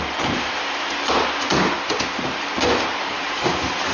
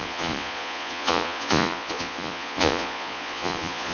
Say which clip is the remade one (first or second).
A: second